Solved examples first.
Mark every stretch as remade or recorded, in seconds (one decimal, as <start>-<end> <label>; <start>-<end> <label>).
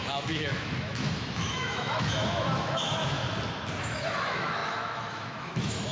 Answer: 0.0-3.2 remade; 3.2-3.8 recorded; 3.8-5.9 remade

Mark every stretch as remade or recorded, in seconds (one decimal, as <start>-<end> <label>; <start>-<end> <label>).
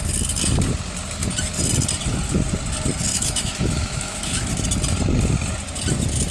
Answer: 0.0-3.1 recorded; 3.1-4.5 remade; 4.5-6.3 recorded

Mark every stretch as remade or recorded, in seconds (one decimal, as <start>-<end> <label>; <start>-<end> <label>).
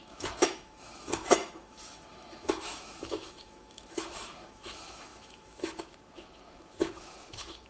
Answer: 0.0-7.7 remade